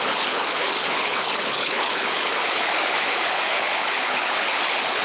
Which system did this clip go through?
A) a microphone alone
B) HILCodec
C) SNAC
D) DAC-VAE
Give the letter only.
B